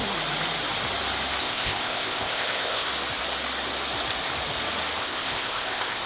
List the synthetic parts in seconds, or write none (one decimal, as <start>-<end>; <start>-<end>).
1.4-2.9; 5.0-6.1